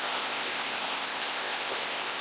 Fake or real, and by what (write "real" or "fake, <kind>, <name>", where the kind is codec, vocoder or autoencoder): fake, codec, ZipCodec